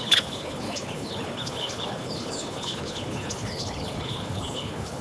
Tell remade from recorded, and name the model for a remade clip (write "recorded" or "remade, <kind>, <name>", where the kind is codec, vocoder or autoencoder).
remade, codec, HILCodec